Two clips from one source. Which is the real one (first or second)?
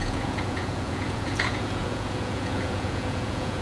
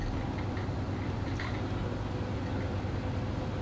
second